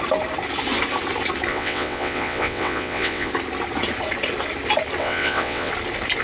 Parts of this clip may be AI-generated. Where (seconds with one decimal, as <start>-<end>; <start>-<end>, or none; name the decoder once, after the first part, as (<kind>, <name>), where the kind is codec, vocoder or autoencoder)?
1.5-3.3 (vocoder, WaveNeXt); 5.0-5.7